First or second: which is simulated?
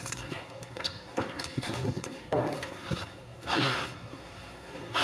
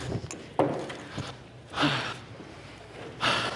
first